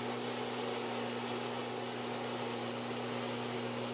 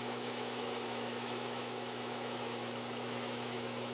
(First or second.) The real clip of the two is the first